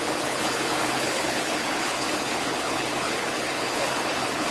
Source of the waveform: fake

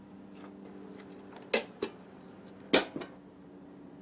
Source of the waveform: real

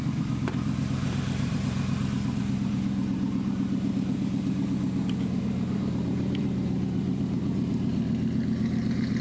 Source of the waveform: fake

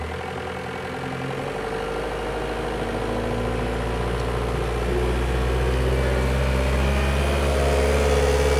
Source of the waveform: real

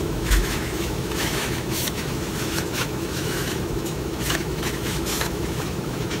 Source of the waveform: fake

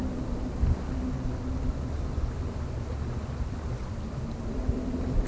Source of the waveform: real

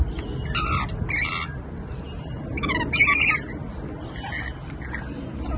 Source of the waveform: real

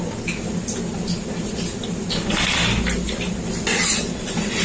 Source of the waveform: real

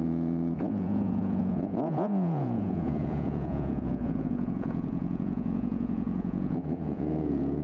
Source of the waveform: fake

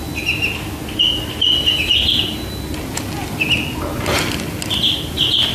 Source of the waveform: real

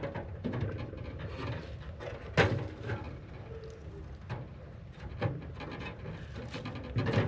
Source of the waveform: real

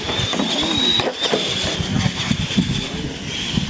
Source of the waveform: real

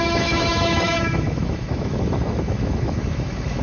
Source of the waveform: fake